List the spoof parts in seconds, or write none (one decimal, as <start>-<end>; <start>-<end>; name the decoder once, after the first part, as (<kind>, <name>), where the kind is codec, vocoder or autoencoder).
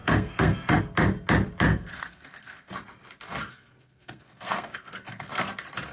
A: 0.0-0.8 (codec, SNAC); 1.7-2.7; 3.5-5.5